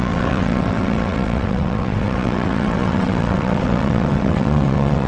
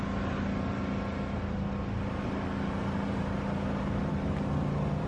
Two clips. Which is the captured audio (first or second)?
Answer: second